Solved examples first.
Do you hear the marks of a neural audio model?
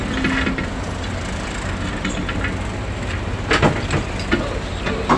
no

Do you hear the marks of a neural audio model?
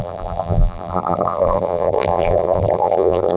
yes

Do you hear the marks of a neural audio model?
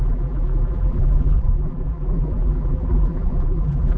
yes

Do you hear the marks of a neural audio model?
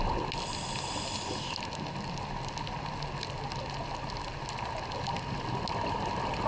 no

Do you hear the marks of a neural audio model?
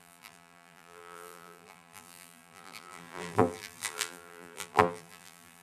yes